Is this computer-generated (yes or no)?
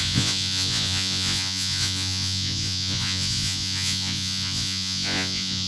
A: yes